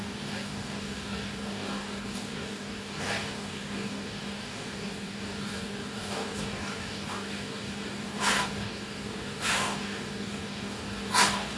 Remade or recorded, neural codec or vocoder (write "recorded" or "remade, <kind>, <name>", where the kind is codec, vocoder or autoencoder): remade, codec, DAC